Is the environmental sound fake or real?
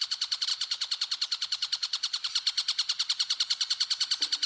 real